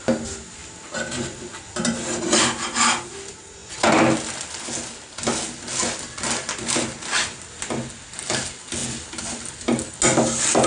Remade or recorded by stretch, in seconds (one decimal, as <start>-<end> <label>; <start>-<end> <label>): 0.0-10.7 recorded